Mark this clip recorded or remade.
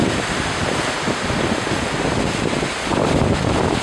recorded